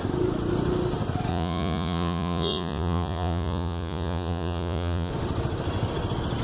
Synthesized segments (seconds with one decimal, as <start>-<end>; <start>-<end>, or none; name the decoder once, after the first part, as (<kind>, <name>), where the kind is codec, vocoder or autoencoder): 1.3-5.1 (vocoder, Vocos)